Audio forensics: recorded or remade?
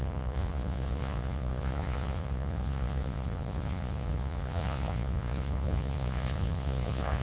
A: remade